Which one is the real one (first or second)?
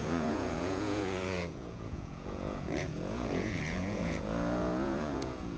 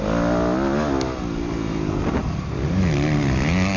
second